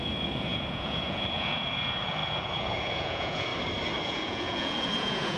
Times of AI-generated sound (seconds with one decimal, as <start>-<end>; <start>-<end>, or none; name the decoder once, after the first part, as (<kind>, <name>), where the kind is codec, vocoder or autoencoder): 0.0-3.5 (vocoder, Vocos); 4.0-5.4